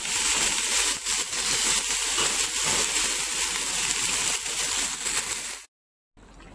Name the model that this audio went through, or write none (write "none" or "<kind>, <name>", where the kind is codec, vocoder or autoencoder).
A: none